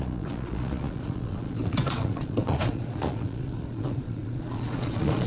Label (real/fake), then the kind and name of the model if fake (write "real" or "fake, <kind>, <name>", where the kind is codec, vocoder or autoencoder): fake, vocoder, Vocos